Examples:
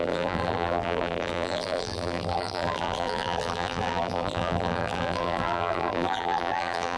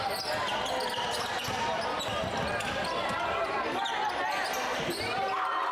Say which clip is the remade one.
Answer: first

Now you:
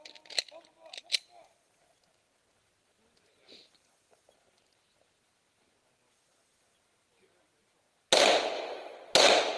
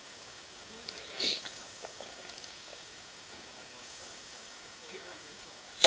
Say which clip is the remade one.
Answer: second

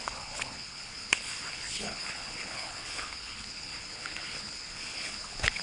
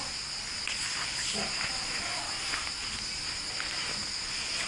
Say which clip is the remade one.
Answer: first